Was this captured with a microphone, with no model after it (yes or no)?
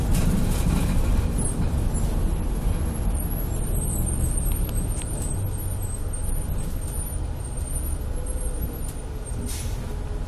yes